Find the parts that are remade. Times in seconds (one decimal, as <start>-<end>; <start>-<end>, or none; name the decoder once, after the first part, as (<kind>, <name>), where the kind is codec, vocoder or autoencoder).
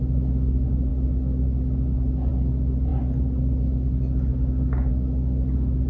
none